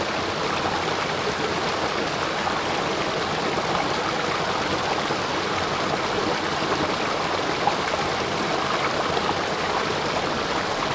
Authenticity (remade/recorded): recorded